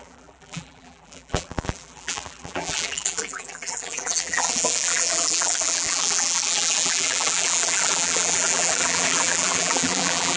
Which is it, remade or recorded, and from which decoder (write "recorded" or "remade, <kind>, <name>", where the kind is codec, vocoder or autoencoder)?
remade, vocoder, BigVGAN v2